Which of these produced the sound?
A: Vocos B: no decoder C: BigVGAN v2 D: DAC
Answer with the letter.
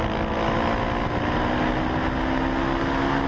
B